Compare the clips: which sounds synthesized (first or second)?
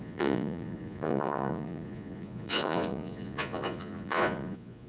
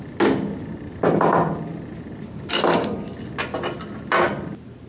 first